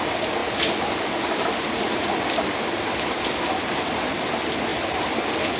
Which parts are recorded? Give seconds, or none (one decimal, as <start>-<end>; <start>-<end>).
0.0-5.6